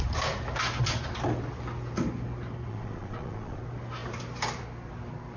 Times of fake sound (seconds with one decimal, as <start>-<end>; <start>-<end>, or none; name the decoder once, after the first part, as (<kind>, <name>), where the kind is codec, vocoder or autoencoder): 2.7-3.6 (vocoder, Vocos)